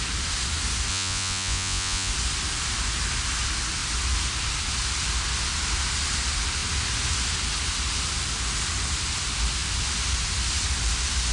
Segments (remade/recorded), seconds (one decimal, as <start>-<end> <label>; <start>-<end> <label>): 0.0-0.9 recorded; 0.9-2.1 remade; 2.1-11.3 recorded